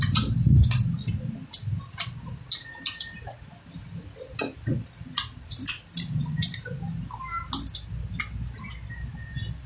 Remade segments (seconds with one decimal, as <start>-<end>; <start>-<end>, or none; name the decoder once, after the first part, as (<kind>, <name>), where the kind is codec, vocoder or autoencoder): none